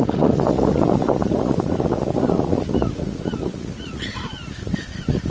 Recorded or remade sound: remade